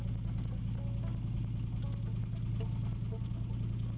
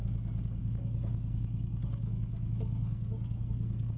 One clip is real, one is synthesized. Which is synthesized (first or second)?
second